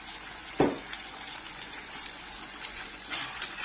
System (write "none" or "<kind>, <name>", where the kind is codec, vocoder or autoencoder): vocoder, Vocos